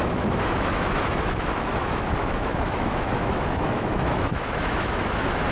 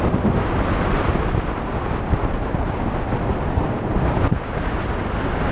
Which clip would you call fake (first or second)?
first